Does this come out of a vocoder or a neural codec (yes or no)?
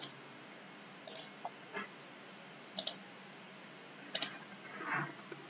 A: no